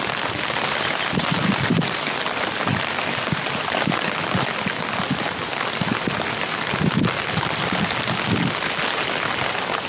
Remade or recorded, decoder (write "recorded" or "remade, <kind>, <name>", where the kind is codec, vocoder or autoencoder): recorded